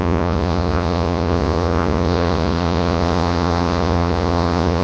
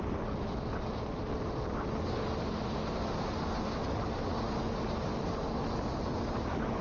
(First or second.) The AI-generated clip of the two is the first